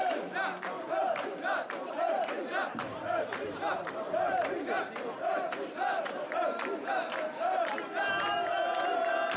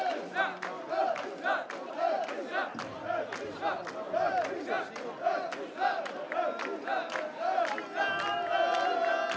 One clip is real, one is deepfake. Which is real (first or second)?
second